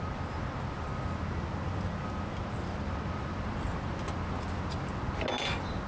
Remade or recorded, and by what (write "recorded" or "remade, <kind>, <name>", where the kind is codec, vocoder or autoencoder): recorded